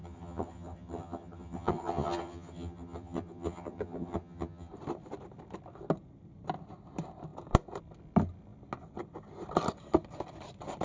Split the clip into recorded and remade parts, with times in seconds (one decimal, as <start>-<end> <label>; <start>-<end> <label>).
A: 0.0-4.7 remade; 4.7-10.8 recorded